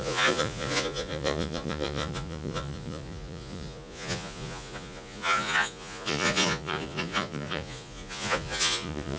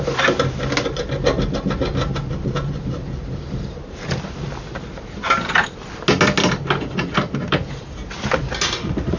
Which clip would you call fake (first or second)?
first